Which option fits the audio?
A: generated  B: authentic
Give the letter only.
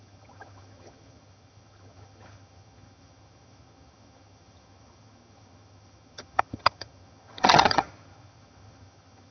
A